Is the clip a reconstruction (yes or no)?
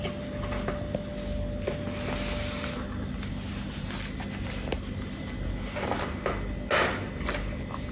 no